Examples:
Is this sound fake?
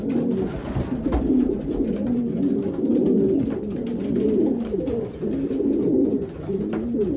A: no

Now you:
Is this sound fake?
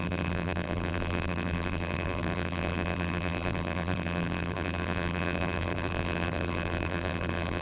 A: yes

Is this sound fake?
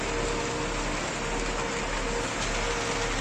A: no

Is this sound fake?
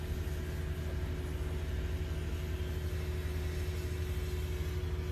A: no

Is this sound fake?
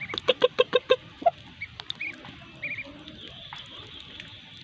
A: no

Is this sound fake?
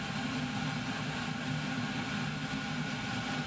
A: no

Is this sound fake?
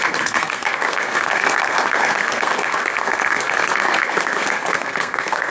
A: yes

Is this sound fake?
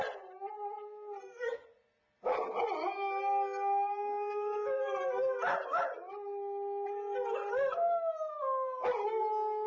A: no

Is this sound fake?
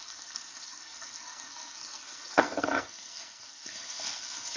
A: yes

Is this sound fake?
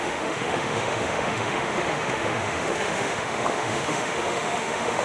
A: yes